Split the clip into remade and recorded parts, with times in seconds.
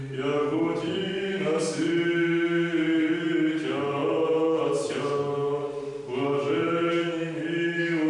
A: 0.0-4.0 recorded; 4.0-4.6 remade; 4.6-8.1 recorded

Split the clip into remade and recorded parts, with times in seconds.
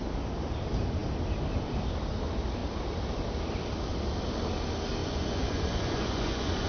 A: 0.0-5.0 recorded; 5.0-6.7 remade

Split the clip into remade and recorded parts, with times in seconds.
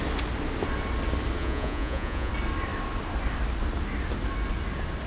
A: 0.0-1.4 recorded; 1.4-2.3 remade; 2.3-5.1 recorded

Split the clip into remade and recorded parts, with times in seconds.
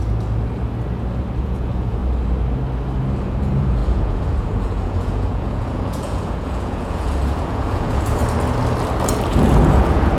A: 0.0-1.4 recorded; 1.4-2.0 remade; 2.0-3.2 recorded; 3.2-8.2 remade; 8.2-9.3 recorded; 9.3-10.2 remade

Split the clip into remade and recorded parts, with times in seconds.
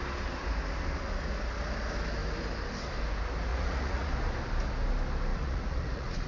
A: 0.0-3.5 recorded; 3.5-4.1 remade; 4.1-5.3 recorded; 5.3-6.3 remade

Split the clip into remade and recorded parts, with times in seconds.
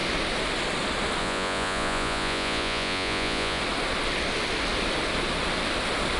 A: 0.0-1.2 recorded; 1.2-3.6 remade; 3.6-6.2 recorded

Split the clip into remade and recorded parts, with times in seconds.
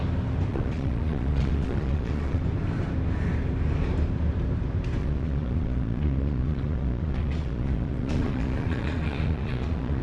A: 0.0-0.5 recorded; 0.5-2.4 remade; 2.4-5.0 recorded; 5.0-10.0 remade